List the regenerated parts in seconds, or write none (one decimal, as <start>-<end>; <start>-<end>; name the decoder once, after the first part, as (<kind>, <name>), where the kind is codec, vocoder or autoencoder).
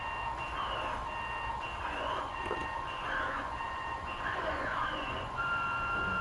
1.8-6.2 (vocoder, Vocos)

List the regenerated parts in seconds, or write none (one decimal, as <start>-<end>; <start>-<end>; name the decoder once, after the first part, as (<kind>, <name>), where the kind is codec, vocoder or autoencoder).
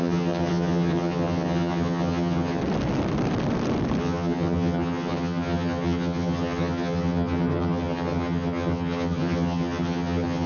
0.0-2.6 (vocoder, HiFi-GAN); 4.0-10.5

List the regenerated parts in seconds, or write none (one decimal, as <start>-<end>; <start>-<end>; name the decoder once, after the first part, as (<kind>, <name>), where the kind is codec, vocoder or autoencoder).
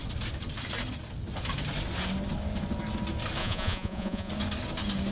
3.4-4.3 (vocoder, Vocos)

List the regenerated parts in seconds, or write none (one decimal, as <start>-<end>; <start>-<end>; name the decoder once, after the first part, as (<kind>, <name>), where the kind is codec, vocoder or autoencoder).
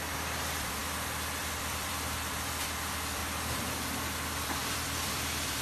0.0-0.8 (vocoder, BigVGAN v2); 1.4-3.2; 4.4-5.6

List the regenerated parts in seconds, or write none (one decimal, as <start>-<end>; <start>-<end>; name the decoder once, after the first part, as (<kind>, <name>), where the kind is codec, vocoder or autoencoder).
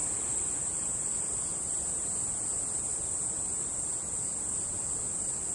0.0-0.6 (vocoder, BigVGAN v2); 2.9-4.9